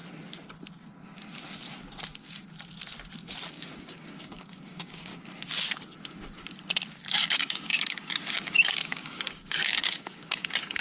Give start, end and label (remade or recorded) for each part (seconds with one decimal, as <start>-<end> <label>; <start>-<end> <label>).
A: 0.0-3.5 recorded; 3.5-5.1 remade; 5.1-6.9 recorded; 6.9-10.8 remade